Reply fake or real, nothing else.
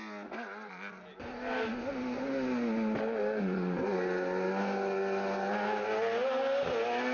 real